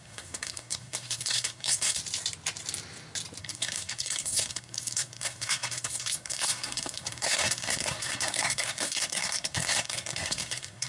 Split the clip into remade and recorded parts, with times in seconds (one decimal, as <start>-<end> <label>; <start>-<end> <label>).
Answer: 0.0-2.0 remade; 2.0-3.4 recorded; 3.4-10.9 remade